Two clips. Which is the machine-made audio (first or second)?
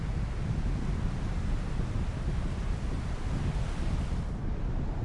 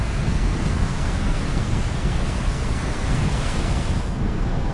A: second